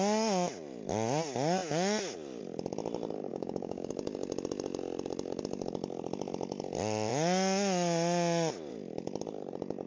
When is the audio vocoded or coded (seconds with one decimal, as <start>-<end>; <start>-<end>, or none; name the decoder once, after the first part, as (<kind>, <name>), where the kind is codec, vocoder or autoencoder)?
3.3-3.9 (codec, DAC)